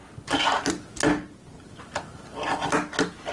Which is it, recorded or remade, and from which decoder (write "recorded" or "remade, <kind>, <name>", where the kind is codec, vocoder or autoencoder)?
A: recorded